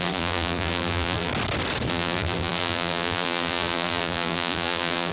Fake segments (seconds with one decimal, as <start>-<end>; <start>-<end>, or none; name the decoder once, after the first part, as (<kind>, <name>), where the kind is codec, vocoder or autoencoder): 0.0-1.3 (vocoder, BigVGAN v2); 1.9-5.1